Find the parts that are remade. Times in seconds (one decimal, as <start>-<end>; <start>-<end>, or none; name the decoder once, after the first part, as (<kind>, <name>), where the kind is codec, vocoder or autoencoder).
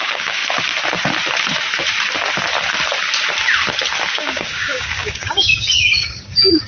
0.0-0.4 (codec, DAC); 4.1-6.7